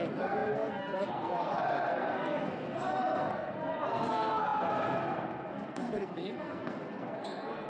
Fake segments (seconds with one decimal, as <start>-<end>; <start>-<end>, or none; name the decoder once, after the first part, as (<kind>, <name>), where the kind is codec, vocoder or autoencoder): 0.0-7.7 (codec, SNAC)